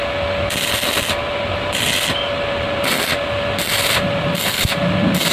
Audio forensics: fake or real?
real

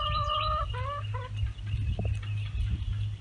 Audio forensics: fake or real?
real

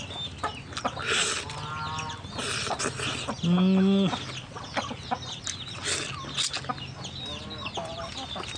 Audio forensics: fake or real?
real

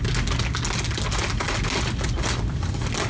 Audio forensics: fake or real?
real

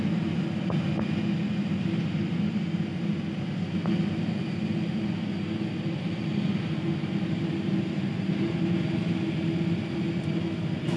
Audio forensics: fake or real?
real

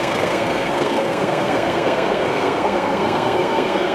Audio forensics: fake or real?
fake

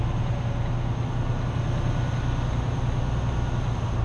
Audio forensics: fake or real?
real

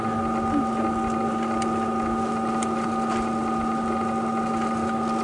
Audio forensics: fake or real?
real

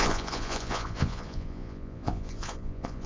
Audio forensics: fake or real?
fake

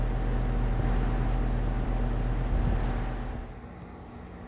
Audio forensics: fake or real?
real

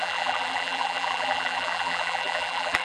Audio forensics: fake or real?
fake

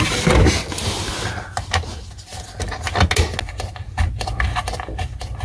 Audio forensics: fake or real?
real